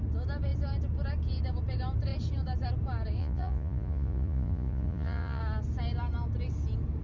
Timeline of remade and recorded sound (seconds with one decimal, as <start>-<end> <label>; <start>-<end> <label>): 0.0-3.2 recorded; 3.2-5.4 remade; 5.4-7.0 recorded